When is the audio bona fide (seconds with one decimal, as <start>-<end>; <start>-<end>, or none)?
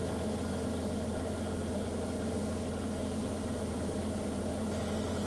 0.0-3.2; 4.5-5.3